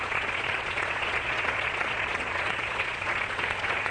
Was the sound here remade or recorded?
remade